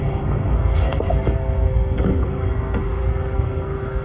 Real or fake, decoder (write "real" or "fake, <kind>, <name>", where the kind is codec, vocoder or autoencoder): fake, codec, SNAC